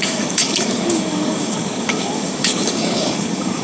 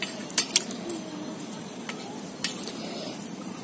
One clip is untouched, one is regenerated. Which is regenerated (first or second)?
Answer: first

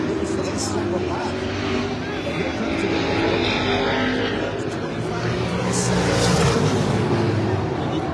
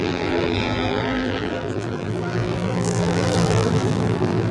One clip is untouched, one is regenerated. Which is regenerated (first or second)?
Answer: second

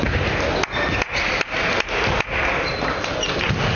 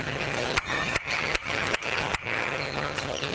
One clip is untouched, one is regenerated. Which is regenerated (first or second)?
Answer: second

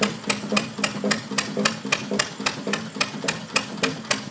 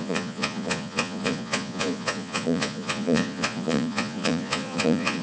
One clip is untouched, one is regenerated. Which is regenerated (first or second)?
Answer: second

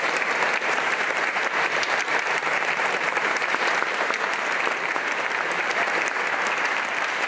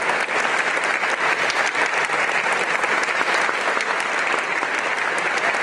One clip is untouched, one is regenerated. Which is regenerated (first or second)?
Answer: first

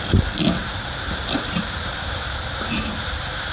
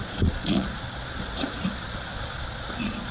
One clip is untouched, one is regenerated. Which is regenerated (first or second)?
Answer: second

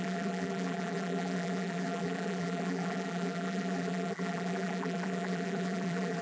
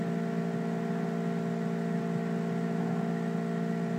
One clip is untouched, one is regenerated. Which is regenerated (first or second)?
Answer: first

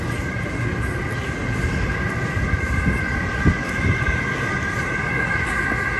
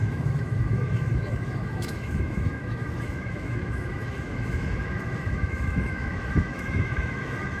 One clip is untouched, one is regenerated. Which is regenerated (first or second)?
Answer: second